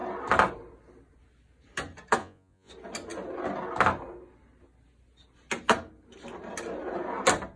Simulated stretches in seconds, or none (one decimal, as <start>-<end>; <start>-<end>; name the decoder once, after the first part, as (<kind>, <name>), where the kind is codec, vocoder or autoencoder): 2.2-2.7 (vocoder, Vocos)